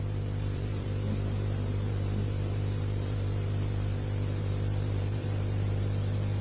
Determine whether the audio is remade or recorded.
remade